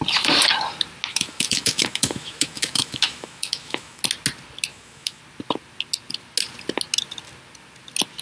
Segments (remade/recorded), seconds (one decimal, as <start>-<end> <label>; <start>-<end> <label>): 0.0-1.1 recorded; 1.1-4.0 remade; 4.0-4.7 recorded; 4.7-5.2 remade; 5.2-8.2 recorded